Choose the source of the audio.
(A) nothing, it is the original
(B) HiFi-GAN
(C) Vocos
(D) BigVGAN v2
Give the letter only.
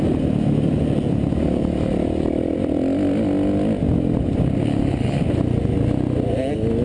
A